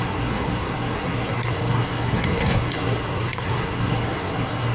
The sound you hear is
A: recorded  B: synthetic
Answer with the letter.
B